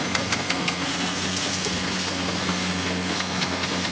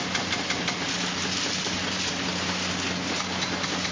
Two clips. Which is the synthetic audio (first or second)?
first